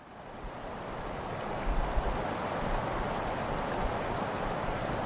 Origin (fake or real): real